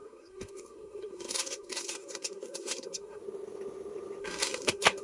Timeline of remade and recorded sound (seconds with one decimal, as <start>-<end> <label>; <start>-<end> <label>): 0.0-3.2 remade; 3.2-4.2 recorded; 4.2-5.0 remade